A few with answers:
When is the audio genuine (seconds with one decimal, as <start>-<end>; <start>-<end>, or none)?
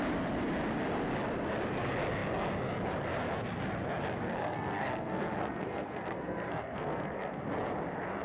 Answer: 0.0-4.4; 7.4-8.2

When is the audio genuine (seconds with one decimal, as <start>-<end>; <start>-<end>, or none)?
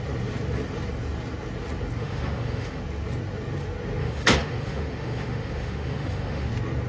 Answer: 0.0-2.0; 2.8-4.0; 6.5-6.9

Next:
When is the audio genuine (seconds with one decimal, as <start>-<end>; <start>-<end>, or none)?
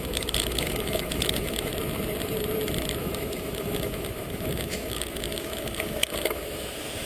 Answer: 1.7-3.0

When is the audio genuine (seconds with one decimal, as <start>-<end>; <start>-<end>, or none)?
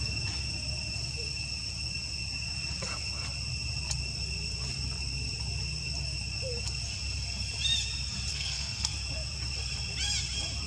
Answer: 0.0-8.3; 8.9-10.7